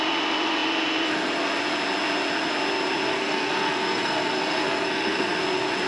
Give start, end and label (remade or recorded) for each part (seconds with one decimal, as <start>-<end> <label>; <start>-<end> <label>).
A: 0.0-3.1 recorded; 3.1-5.4 remade; 5.4-5.9 recorded